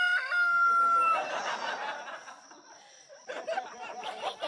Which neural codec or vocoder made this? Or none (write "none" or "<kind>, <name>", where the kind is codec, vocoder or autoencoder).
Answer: none